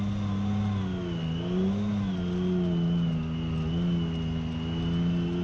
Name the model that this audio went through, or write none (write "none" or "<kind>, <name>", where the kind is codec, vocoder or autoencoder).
none